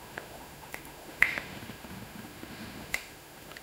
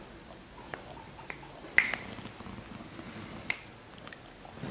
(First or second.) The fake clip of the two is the first